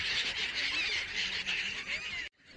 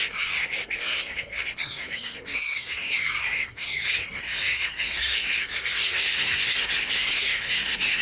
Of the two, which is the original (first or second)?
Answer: first